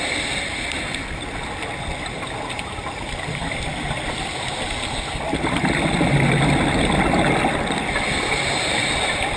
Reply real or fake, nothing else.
real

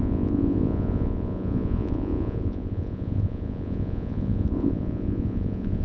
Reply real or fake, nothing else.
fake